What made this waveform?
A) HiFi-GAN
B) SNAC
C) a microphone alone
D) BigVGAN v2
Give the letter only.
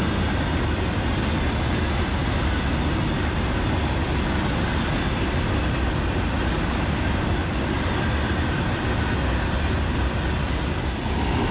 C